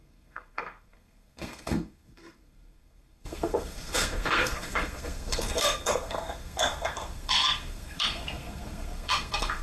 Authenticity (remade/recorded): remade